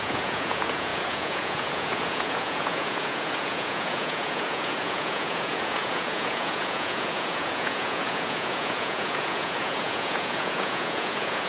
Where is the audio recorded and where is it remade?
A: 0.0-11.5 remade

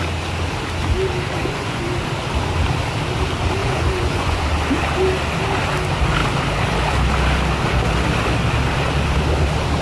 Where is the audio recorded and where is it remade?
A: 0.0-1.4 recorded; 1.4-2.0 remade; 2.0-3.6 recorded; 3.6-4.4 remade; 4.4-9.8 recorded

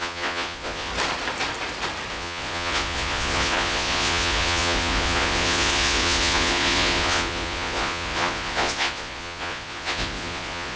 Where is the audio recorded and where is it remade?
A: 0.0-0.9 remade; 0.9-2.1 recorded; 2.1-10.8 remade

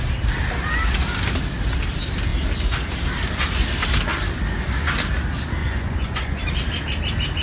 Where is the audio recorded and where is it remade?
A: 0.0-5.6 recorded; 5.6-6.4 remade; 6.4-7.4 recorded

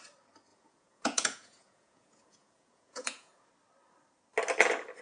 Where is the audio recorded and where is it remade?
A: 0.0-0.5 recorded; 0.5-3.5 remade; 3.5-5.0 recorded

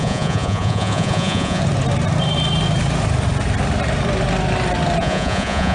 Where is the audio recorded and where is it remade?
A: 0.0-1.6 remade; 1.6-5.0 recorded; 5.0-5.7 remade

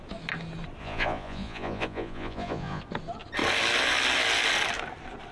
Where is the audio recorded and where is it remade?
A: 0.0-0.8 recorded; 0.8-2.8 remade; 2.8-5.3 recorded

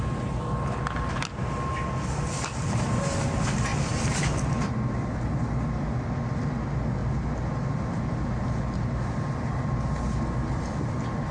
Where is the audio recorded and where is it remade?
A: 0.0-11.3 recorded